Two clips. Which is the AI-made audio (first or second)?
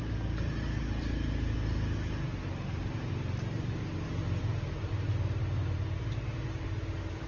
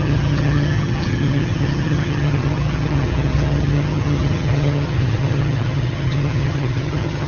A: second